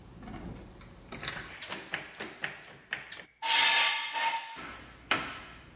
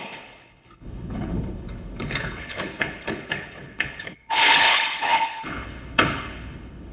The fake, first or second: second